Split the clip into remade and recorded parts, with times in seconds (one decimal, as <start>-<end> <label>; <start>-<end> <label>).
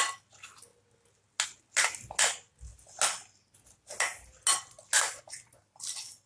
0.0-6.3 recorded